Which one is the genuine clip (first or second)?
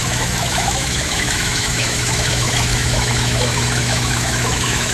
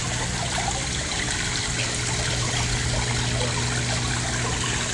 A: second